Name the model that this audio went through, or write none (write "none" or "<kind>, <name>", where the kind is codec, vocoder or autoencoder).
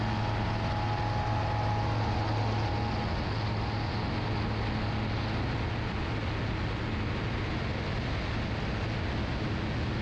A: none